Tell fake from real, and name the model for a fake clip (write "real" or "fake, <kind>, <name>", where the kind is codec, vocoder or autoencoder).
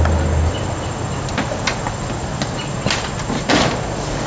real